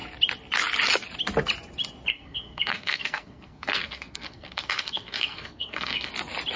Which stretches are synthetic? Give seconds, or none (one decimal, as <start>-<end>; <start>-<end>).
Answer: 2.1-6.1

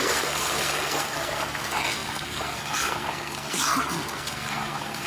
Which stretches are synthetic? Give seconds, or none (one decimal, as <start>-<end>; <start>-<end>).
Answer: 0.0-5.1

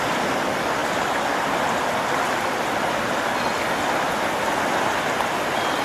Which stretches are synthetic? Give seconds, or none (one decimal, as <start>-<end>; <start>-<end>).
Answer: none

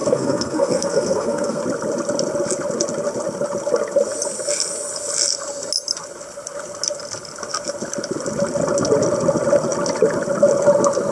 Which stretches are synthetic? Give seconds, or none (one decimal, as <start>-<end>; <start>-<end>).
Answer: 0.0-1.6

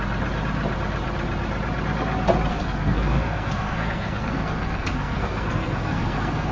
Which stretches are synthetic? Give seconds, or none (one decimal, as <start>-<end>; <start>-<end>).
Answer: 2.5-6.5

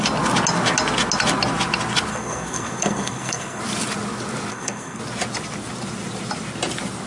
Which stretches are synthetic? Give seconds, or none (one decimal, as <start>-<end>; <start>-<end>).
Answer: 2.1-3.6; 4.5-5.0

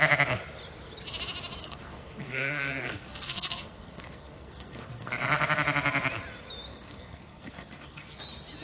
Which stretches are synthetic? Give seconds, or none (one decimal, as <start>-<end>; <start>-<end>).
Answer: 1.6-5.1; 6.7-8.2